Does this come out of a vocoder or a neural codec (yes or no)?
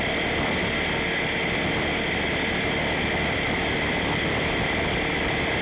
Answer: no